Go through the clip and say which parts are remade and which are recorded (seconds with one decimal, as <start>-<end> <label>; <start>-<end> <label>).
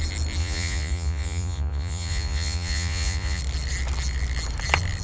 0.0-0.4 recorded; 0.4-3.4 remade; 3.4-5.0 recorded